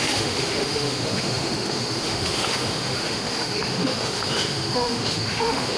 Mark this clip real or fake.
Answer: fake